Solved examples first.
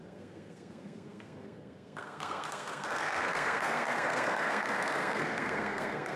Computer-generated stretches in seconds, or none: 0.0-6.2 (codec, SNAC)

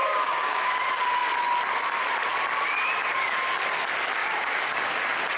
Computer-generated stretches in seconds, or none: 0.0-0.7 (codec, DAC); 4.2-5.0

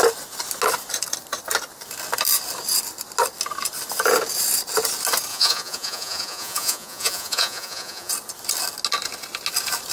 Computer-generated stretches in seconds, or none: 5.3-8.1 (vocoder, Vocos)